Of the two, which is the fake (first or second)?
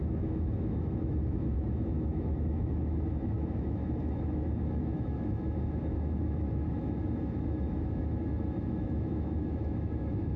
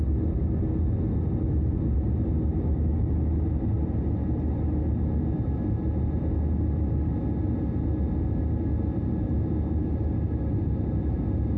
first